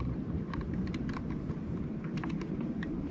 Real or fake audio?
real